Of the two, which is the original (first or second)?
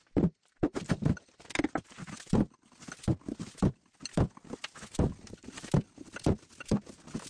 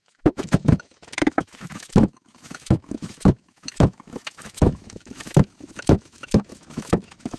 first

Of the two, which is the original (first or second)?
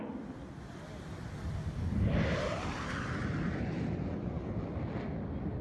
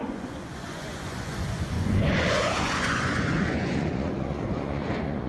first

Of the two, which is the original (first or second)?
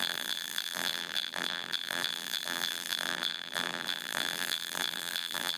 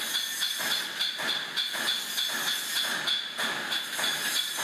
second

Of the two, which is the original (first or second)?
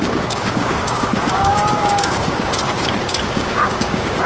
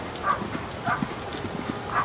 second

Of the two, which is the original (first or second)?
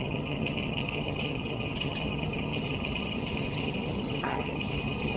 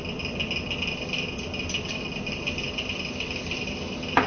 second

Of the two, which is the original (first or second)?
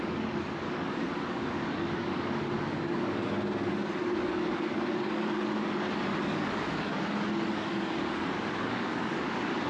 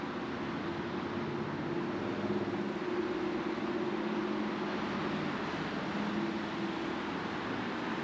second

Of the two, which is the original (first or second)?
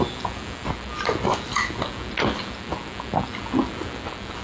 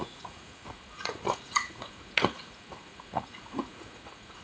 first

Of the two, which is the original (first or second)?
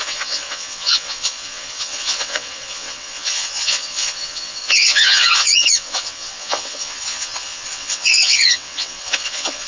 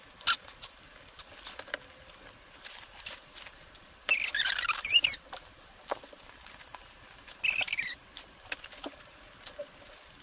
second